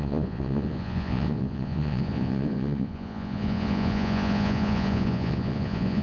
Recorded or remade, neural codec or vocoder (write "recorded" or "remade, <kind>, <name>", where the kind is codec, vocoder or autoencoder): remade, vocoder, Vocos